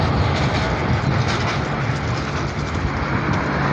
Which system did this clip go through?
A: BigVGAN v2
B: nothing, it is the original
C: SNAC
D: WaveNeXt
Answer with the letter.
B